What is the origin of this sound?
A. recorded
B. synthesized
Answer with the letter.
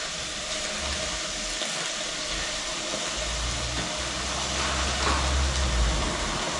A